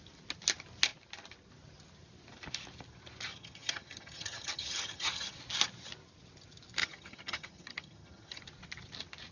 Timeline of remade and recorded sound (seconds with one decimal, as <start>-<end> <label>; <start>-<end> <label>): 0.0-3.3 recorded; 3.3-5.4 remade; 5.4-6.8 recorded; 6.8-8.4 remade; 8.4-9.3 recorded